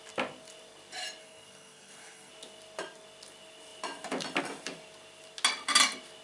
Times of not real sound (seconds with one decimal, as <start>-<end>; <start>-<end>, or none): 1.2-2.3